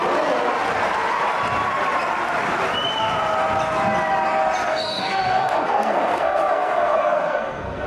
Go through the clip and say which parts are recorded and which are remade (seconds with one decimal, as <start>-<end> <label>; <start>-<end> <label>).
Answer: 0.0-4.7 recorded; 4.7-7.9 remade